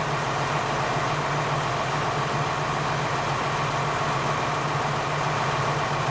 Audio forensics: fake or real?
real